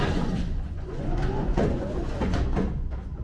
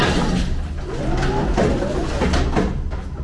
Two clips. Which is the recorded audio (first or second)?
second